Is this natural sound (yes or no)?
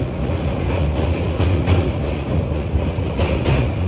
no